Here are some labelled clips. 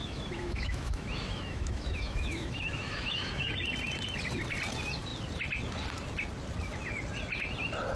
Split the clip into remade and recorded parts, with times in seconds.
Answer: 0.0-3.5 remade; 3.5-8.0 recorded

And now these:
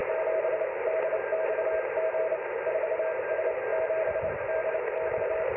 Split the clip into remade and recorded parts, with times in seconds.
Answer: 0.0-5.6 recorded

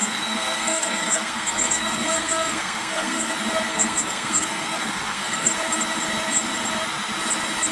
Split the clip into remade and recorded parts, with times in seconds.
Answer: 0.0-3.3 remade; 3.3-3.7 recorded; 3.7-5.5 remade; 5.5-7.7 recorded

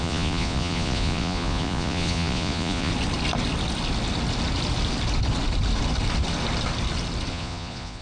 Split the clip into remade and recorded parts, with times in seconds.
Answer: 0.0-2.9 remade; 2.9-7.3 recorded; 7.3-8.0 remade

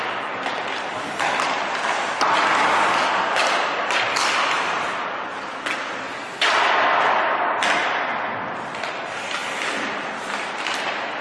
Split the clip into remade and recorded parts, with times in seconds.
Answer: 0.0-9.4 recorded; 9.4-10.1 remade; 10.1-11.2 recorded